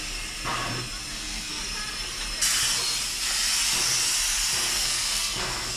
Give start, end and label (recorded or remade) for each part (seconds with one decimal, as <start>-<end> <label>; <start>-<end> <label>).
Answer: 0.0-1.1 recorded; 1.1-1.6 remade; 1.6-4.7 recorded; 4.7-5.8 remade